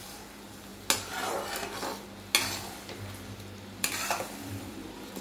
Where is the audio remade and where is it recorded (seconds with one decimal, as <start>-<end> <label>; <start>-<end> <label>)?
0.0-0.7 remade; 0.7-3.8 recorded; 3.8-5.2 remade